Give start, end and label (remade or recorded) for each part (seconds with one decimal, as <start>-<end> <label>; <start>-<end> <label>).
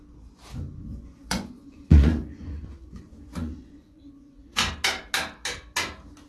0.0-0.9 recorded; 0.9-4.7 remade; 4.7-6.3 recorded